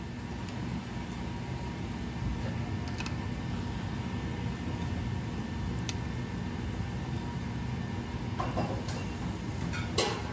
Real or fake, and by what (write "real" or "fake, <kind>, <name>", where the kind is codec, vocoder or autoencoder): real